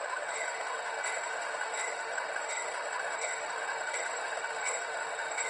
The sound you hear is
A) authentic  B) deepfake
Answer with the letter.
B